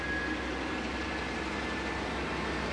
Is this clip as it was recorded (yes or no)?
yes